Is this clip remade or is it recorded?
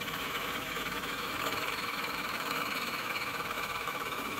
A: remade